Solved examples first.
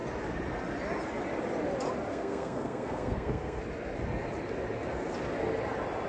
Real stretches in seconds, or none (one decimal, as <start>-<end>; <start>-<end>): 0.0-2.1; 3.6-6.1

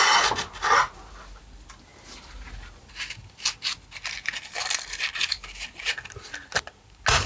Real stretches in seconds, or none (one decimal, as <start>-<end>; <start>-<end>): 0.0-7.3

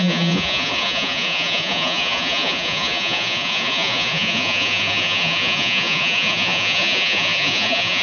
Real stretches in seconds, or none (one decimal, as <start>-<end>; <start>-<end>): none